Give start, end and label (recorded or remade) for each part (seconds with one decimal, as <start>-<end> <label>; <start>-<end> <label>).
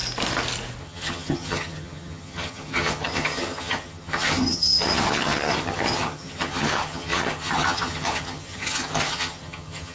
0.0-0.8 recorded; 0.8-9.9 remade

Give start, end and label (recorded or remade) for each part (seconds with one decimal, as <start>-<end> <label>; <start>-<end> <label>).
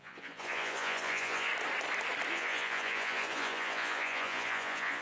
0.0-1.5 remade; 1.5-2.3 recorded; 2.3-5.0 remade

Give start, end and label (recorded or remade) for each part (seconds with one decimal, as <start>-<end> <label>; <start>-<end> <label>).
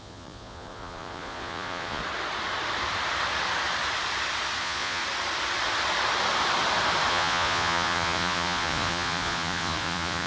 0.0-2.0 remade; 2.0-4.6 recorded; 4.6-5.0 remade; 5.0-7.1 recorded; 7.1-10.3 remade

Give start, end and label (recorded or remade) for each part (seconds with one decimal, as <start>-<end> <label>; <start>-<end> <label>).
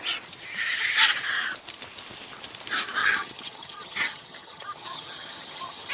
0.0-3.0 recorded; 3.0-5.9 remade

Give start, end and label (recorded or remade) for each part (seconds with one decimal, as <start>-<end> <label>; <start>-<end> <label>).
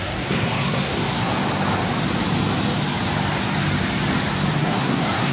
0.0-1.3 remade; 1.3-4.5 recorded; 4.5-5.3 remade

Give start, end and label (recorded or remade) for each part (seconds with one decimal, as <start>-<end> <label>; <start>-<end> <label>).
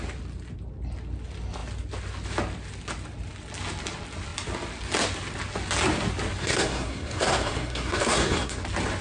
0.0-6.4 recorded; 6.4-8.6 remade; 8.6-9.0 recorded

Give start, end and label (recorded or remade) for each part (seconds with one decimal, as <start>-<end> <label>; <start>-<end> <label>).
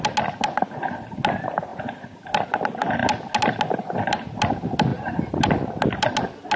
0.0-6.6 recorded